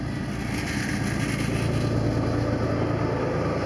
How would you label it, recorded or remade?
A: recorded